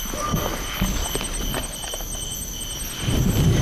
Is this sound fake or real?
real